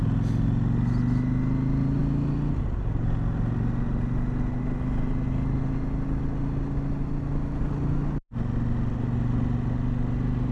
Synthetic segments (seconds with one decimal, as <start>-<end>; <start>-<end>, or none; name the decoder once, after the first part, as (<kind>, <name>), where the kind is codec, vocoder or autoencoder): none